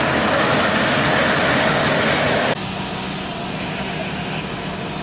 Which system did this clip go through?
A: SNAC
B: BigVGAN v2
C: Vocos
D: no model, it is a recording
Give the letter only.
D